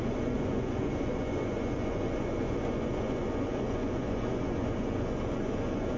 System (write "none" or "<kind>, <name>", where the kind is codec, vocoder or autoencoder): vocoder, Vocos